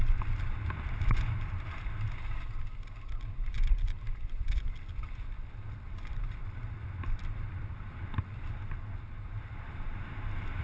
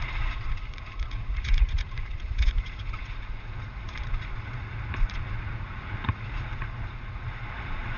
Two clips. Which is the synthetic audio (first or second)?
second